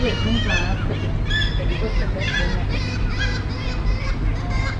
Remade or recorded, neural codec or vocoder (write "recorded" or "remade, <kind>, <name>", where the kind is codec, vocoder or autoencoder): recorded